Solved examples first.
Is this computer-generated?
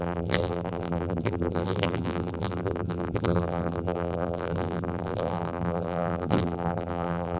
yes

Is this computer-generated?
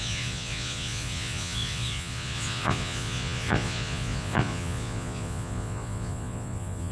yes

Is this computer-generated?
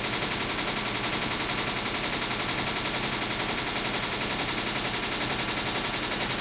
no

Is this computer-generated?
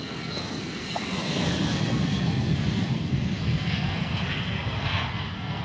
yes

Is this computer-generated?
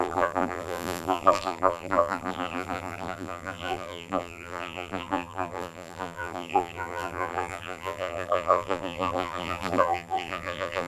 yes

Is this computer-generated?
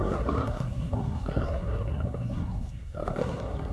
yes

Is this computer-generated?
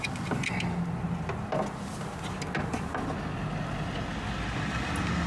no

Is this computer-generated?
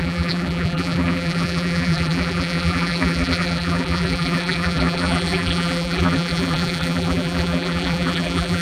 yes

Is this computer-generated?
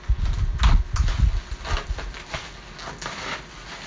no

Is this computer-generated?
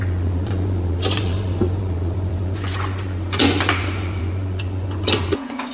yes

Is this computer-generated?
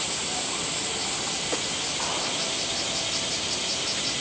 no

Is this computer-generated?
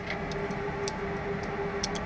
no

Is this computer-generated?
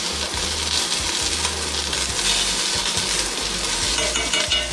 no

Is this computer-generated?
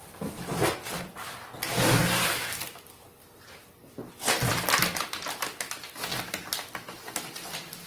no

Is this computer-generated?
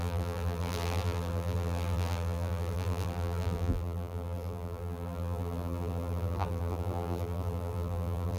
yes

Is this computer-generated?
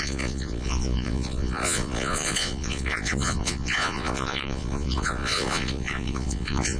yes